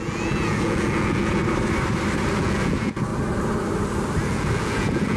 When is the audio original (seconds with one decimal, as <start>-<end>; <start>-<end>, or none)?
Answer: 1.4-2.4; 3.1-4.3